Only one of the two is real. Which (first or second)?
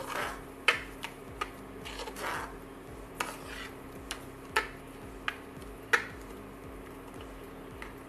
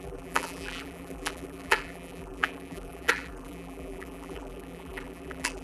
first